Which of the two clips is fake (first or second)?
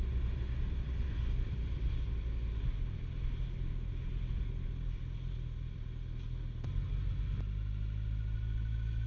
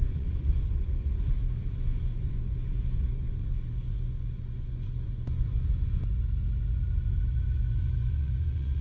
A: second